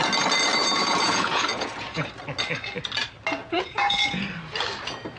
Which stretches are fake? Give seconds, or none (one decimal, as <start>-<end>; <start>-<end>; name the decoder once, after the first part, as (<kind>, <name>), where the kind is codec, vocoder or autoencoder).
0.6-2.1 (vocoder, Vocos); 3.4-4.2

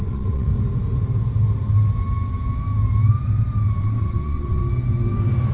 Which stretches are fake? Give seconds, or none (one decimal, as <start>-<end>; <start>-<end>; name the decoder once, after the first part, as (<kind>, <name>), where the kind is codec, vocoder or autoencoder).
0.0-0.5 (vocoder, WaveNeXt); 3.8-4.6